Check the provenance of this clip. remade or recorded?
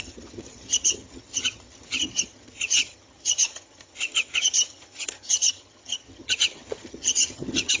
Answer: remade